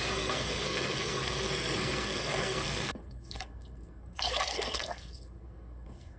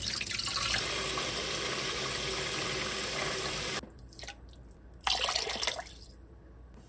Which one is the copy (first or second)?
first